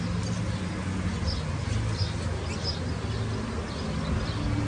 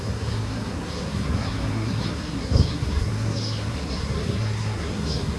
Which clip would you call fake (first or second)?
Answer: second